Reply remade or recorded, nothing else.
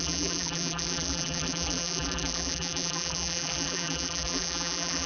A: remade